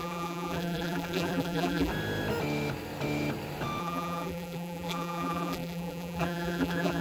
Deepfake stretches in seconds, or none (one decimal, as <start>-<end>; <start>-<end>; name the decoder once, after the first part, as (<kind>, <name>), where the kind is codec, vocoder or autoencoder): 0.0-1.9 (vocoder, BigVGAN v2); 3.8-7.0